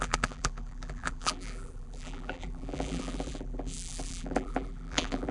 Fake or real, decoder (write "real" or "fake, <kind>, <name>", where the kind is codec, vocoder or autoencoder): fake, vocoder, BigVGAN v2